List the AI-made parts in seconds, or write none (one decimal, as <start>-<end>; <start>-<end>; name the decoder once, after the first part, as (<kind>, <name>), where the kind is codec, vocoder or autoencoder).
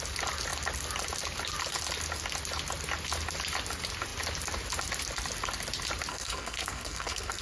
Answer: 6.1-7.4 (codec, SNAC)